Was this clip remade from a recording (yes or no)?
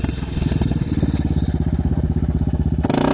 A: no